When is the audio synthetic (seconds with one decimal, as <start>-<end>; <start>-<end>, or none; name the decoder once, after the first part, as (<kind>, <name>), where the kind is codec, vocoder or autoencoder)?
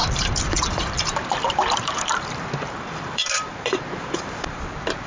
0.0-5.1 (vocoder, BigVGAN v2)